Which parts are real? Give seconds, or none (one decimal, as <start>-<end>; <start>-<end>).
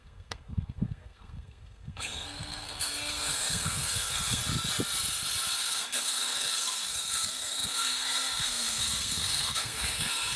4.4-5.6